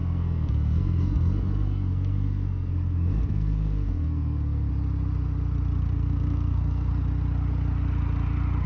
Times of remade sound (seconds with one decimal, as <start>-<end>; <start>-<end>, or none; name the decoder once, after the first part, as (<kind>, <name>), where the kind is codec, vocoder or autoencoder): 0.0-4.7 (codec, SNAC); 5.9-6.9